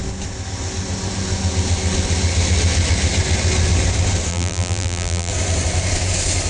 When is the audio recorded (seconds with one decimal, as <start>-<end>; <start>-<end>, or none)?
0.0-4.3; 5.3-6.5